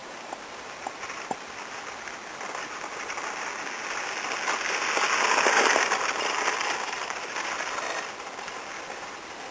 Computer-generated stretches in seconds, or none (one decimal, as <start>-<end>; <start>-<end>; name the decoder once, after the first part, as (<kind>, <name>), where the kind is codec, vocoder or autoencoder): none